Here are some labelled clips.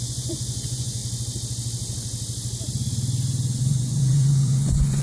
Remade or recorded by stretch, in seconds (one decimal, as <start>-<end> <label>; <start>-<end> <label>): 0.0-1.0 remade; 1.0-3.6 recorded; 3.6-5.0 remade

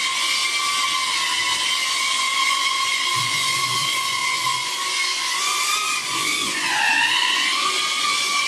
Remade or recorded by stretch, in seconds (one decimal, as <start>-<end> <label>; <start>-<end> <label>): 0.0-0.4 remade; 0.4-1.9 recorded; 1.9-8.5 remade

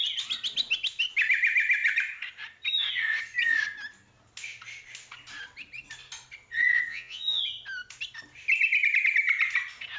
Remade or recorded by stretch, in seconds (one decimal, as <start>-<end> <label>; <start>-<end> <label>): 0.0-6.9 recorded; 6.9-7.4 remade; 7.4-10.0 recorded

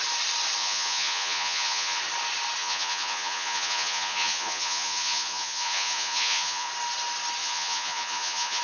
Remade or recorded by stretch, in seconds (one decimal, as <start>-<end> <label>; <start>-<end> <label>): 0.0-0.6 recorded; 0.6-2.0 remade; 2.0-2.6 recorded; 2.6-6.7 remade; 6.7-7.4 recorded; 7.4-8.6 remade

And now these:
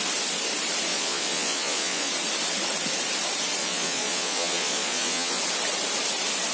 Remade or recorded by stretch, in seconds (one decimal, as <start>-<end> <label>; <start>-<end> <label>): 0.0-0.9 recorded; 0.9-2.1 remade; 2.1-3.6 recorded; 3.6-5.4 remade; 5.4-6.5 recorded